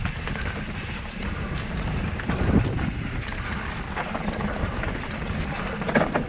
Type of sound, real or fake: real